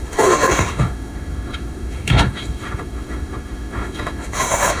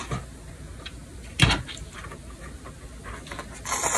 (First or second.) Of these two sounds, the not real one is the first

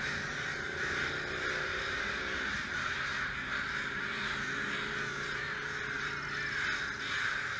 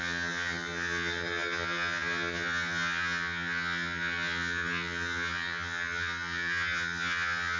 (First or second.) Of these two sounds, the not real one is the second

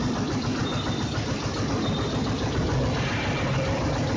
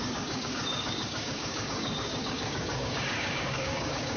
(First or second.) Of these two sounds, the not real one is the second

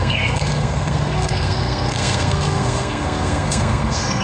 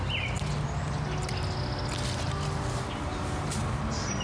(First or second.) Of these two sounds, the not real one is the first